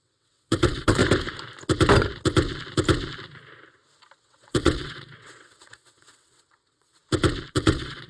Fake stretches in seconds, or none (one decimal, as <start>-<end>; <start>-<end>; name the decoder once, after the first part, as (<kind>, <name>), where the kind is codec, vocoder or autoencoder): 0.0-1.0 (vocoder, WaveNeXt); 4.2-7.0; 7.5-8.1